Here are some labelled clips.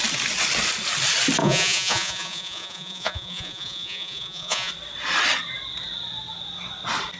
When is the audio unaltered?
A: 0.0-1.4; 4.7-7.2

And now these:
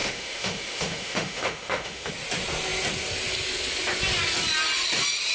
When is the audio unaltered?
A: 2.1-5.3

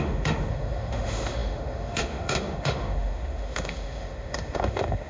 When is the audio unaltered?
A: none

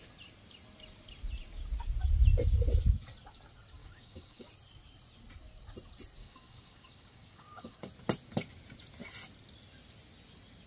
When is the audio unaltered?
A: 0.0-3.8; 4.5-6.2; 7.8-10.7

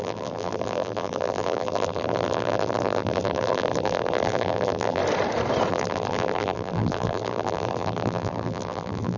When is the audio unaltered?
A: 5.0-5.7

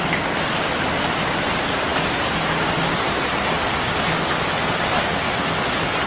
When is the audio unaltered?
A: 0.0-6.1